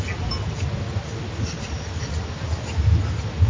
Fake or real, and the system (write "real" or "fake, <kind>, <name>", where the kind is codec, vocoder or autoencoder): real